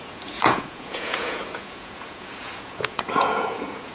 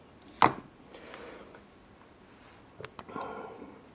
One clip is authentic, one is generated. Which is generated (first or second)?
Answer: first